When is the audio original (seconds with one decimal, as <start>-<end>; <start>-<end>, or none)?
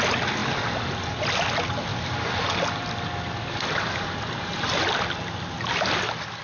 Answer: 0.0-6.4